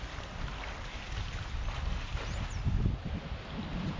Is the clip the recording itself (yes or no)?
yes